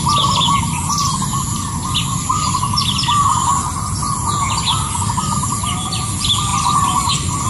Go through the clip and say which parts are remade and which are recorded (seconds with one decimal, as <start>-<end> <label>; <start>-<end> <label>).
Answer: 0.0-6.5 recorded; 6.5-7.1 remade; 7.1-7.5 recorded